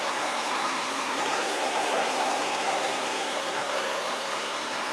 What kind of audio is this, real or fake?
fake